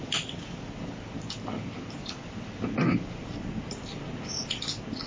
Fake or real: real